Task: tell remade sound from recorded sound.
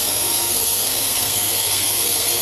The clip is remade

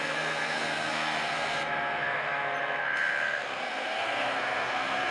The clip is remade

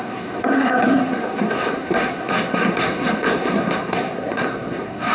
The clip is remade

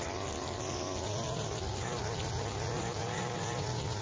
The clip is recorded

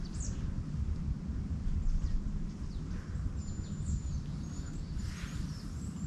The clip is recorded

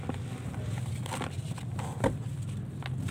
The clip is recorded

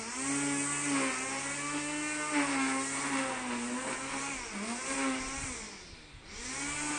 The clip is recorded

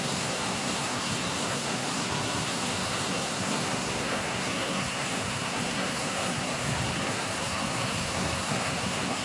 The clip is remade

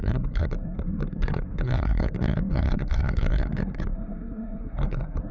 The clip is remade